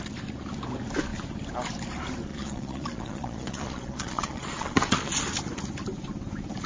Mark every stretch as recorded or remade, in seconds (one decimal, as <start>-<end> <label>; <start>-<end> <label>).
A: 0.0-2.3 recorded; 2.3-5.1 remade; 5.1-6.7 recorded